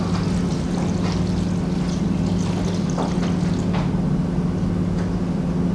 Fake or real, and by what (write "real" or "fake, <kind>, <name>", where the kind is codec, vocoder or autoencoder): real